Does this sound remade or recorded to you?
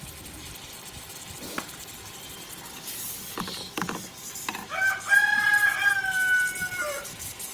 recorded